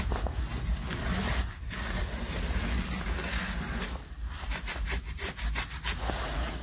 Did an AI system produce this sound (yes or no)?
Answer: no